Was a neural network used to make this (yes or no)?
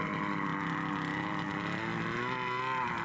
no